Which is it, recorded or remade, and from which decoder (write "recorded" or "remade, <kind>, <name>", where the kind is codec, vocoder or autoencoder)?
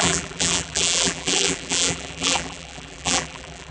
remade, vocoder, BigVGAN v2